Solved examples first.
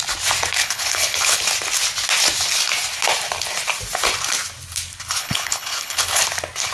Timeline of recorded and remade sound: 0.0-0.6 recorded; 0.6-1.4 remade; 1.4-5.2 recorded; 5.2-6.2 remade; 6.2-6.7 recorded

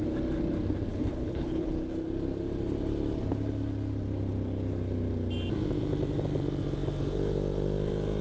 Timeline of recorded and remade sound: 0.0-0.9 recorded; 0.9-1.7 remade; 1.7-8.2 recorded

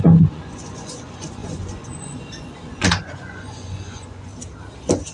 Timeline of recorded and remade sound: 0.0-4.3 remade; 4.3-5.1 recorded

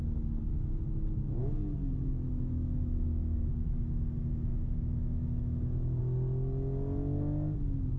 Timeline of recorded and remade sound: 0.0-1.8 recorded; 1.8-3.5 remade; 3.5-4.5 recorded; 4.5-6.0 remade; 6.0-8.0 recorded